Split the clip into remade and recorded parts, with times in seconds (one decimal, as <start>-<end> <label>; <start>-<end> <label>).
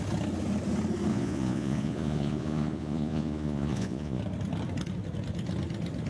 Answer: 0.0-1.1 recorded; 1.1-4.2 remade; 4.2-6.1 recorded